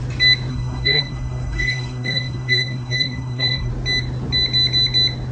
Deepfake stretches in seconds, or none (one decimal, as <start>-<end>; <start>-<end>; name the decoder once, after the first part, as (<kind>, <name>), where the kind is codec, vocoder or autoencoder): 0.5-3.7 (codec, SNAC)